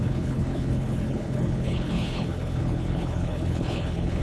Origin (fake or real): fake